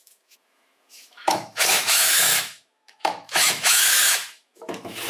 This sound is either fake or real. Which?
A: fake